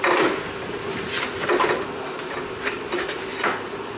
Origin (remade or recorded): recorded